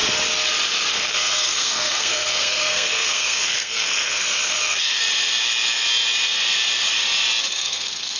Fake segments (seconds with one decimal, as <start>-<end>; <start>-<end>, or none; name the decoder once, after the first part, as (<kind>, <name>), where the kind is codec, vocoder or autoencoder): 0.9-5.0 (codec, SNAC); 7.5-8.2